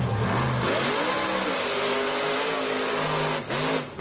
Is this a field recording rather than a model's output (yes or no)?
yes